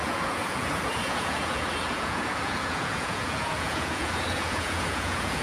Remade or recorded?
remade